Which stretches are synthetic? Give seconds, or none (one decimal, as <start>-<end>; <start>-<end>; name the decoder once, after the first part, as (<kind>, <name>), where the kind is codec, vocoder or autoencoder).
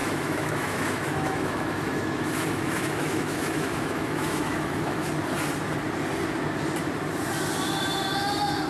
0.0-5.1 (autoencoder, DAC-VAE)